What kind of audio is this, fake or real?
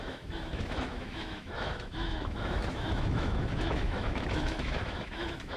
fake